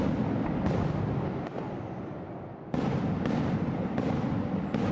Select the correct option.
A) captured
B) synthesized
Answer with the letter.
A